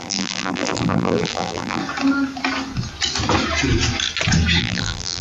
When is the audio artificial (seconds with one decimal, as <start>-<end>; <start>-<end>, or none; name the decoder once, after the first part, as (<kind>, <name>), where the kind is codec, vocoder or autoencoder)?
0.0-1.8 (vocoder, BigVGAN v2); 4.6-5.2